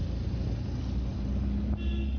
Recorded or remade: recorded